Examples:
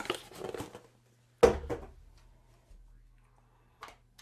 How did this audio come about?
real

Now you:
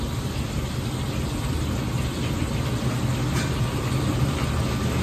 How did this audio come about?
real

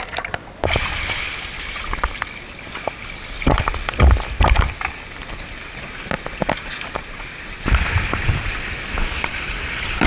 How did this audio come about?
real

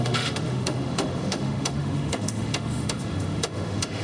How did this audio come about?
fake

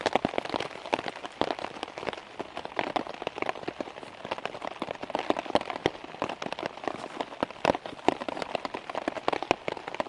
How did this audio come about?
real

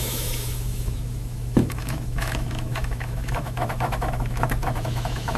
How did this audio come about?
fake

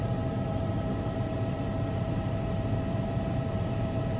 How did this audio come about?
fake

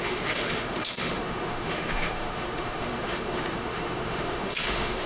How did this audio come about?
fake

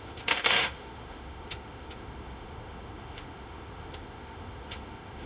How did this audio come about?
fake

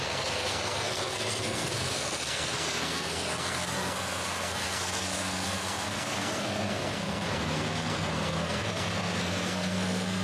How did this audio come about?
fake